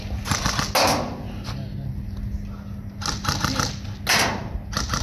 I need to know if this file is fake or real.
real